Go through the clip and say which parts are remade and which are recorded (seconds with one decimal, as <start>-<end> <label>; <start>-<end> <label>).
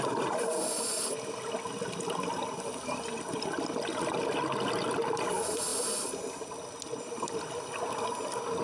0.0-8.6 recorded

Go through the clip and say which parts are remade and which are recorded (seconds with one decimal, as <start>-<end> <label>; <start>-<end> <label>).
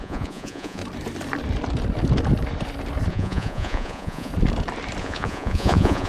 0.0-0.8 remade; 0.8-3.1 recorded; 3.1-4.3 remade; 4.3-5.0 recorded; 5.0-6.1 remade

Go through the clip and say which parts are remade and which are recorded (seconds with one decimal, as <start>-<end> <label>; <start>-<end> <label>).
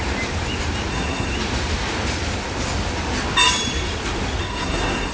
0.0-0.9 recorded; 0.9-1.3 remade; 1.3-4.4 recorded; 4.4-5.1 remade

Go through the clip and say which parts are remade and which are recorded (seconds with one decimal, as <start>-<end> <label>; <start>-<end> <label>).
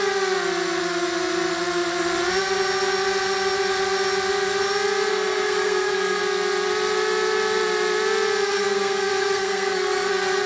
0.0-5.1 recorded; 5.1-6.2 remade; 6.2-8.5 recorded; 8.5-10.1 remade; 10.1-10.5 recorded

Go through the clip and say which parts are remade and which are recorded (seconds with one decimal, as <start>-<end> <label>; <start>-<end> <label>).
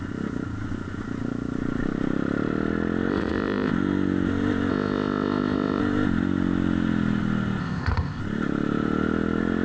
0.0-3.1 recorded; 3.1-3.7 remade; 3.7-4.7 recorded; 4.7-5.8 remade; 5.8-7.6 recorded; 7.6-8.2 remade; 8.2-9.6 recorded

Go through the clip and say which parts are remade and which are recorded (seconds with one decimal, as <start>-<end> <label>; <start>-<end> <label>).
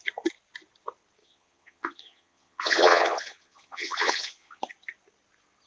0.0-1.2 recorded; 1.2-4.6 remade; 4.6-5.7 recorded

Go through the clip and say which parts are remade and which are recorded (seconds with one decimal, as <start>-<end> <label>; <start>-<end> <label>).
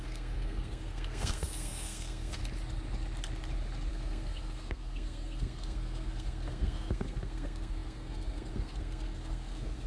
0.0-2.4 remade; 2.4-3.9 recorded; 3.9-9.9 remade